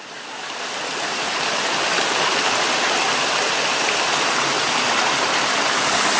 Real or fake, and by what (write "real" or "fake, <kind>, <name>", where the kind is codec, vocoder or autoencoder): real